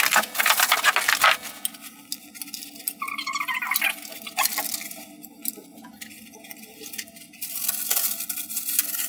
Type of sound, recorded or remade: recorded